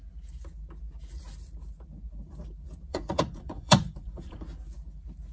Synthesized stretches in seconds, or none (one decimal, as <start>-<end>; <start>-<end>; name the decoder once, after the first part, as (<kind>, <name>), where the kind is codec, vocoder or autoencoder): 2.9-4.4 (vocoder, Vocos)